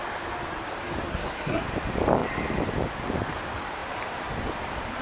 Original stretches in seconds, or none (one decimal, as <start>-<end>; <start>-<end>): 0.0-1.1; 1.6-5.0